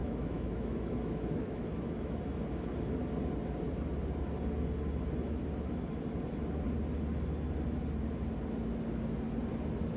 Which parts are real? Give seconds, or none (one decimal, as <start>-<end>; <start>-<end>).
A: 2.2-10.0